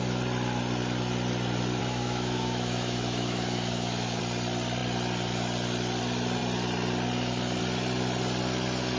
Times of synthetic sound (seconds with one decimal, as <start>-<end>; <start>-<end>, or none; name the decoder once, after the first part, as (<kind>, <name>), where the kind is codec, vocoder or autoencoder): 1.8-4.2 (autoencoder, DAC-VAE)